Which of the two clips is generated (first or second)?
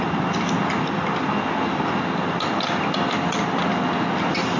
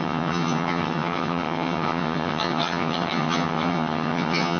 second